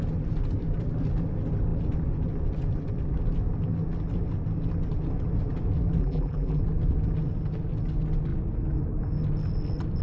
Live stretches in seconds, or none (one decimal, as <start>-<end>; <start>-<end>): 0.0-6.0; 6.6-10.0